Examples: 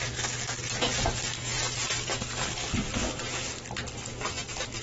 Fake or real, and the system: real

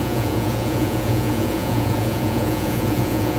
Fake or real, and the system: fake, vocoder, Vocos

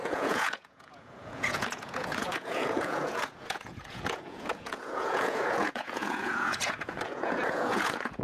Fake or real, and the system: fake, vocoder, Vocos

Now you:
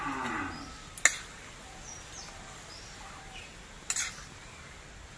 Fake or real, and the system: real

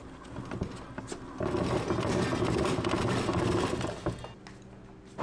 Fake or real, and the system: real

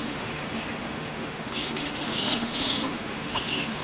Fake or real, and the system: fake, autoencoder, DAC-VAE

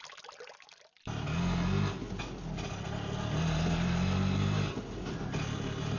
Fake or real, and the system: real